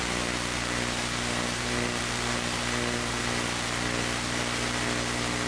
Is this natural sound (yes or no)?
yes